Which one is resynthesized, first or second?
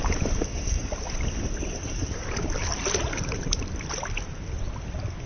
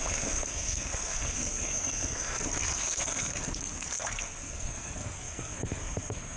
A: second